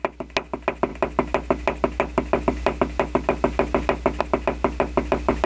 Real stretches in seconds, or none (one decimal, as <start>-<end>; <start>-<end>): 0.0-5.5